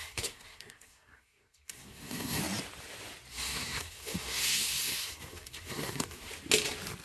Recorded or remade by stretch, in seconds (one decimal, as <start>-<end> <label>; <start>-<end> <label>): 0.0-2.4 remade; 2.4-3.3 recorded; 3.3-6.3 remade; 6.3-7.0 recorded